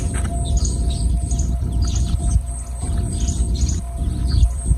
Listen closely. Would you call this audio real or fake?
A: fake